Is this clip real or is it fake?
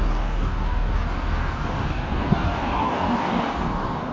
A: fake